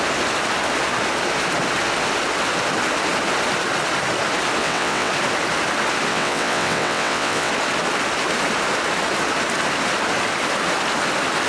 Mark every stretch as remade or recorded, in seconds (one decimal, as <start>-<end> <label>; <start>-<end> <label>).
0.0-4.6 recorded; 4.6-5.1 remade; 5.1-6.1 recorded; 6.1-7.5 remade; 7.5-11.5 recorded